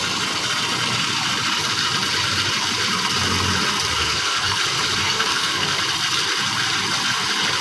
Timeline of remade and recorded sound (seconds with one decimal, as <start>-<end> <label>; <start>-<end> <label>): 0.0-4.0 recorded; 4.0-4.6 remade; 4.6-5.0 recorded; 5.0-5.8 remade; 5.8-7.6 recorded